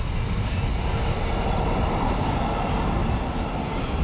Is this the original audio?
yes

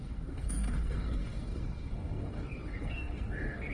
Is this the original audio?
no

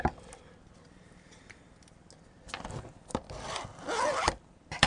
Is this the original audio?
yes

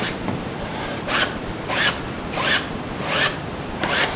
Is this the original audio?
no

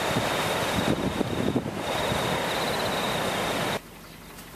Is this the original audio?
yes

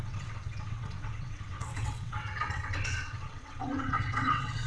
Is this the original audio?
no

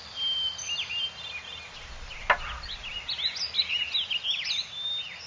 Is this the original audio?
yes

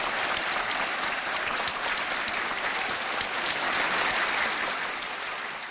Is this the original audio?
no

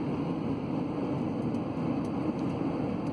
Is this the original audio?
yes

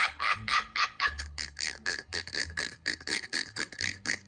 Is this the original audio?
no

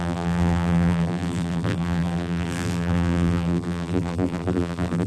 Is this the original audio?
no